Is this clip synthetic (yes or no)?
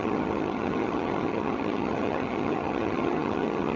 yes